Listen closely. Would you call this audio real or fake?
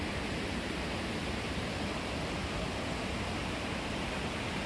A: real